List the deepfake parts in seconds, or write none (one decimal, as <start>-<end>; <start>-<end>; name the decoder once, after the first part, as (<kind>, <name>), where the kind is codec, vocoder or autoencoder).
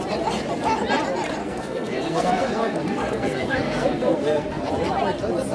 1.4-4.7 (codec, SNAC)